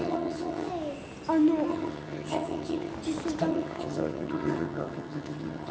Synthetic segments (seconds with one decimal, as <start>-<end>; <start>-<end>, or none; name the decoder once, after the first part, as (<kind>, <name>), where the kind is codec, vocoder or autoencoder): 0.0-0.7 (vocoder, HiFi-GAN); 1.7-2.9; 3.5-5.7